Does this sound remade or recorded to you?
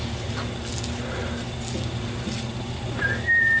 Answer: recorded